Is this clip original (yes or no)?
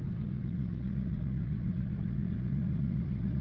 no